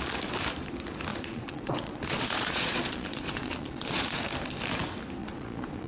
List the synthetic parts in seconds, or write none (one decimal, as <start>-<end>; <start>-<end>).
1.1-4.2; 5.2-5.9